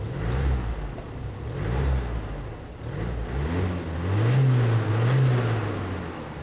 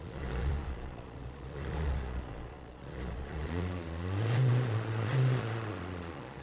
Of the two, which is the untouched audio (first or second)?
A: first